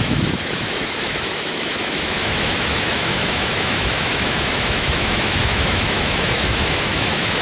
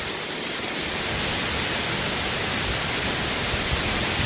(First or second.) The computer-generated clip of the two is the first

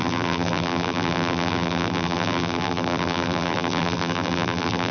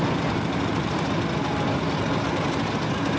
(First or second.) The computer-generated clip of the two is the first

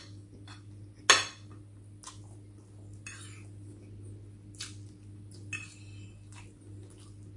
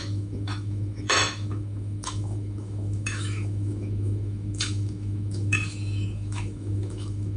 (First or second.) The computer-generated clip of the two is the second